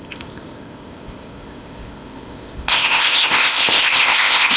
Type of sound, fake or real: fake